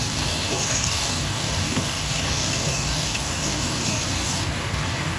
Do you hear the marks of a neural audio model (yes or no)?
yes